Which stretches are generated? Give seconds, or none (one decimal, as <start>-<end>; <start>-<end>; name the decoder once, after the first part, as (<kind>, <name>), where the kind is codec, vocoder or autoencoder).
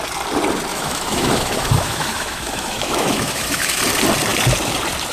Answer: 0.7-3.8 (autoencoder, DAC-VAE)